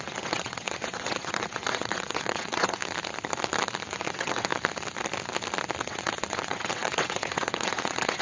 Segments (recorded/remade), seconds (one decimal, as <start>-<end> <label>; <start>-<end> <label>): 0.0-2.8 remade; 2.8-3.9 recorded; 3.9-4.5 remade; 4.5-5.8 recorded; 5.8-8.2 remade